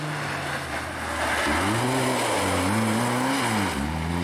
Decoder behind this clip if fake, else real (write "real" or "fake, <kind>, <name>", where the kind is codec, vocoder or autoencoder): real